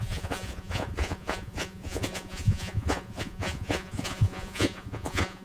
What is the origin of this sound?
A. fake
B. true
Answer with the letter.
A